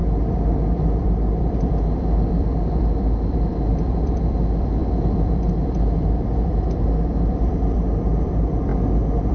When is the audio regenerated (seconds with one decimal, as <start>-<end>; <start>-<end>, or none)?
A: 0.0-8.7